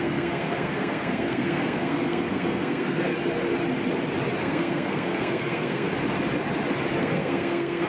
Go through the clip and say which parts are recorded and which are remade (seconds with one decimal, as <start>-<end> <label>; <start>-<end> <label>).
0.0-3.1 remade; 3.1-4.4 recorded; 4.4-5.9 remade; 5.9-7.0 recorded; 7.0-7.9 remade